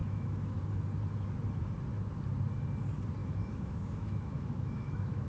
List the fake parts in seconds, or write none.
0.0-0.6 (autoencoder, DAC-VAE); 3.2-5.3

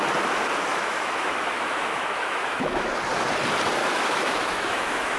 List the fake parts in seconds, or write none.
0.7-2.9 (autoencoder, DAC-VAE); 3.8-5.2

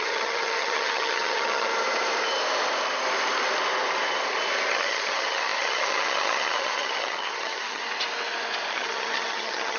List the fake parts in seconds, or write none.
0.0-1.7 (vocoder, HiFi-GAN); 4.7-7.8; 8.7-9.8

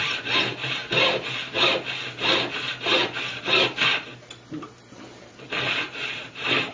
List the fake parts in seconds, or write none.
0.0-0.8 (vocoder, BigVGAN v2); 4.8-6.7

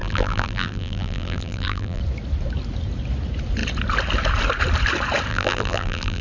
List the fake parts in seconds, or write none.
0.0-2.0 (vocoder, BigVGAN v2); 5.3-6.2

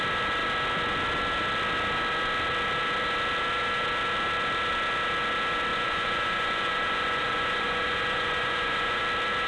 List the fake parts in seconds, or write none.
5.7-9.0 (vocoder, Vocos)

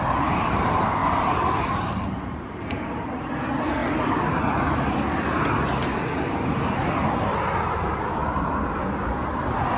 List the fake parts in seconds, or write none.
0.0-1.0 (vocoder, BigVGAN v2); 1.9-3.8; 7.7-8.2

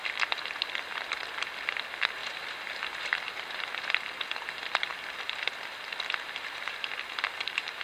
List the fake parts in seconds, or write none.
2.2-3.9 (vocoder, BigVGAN v2)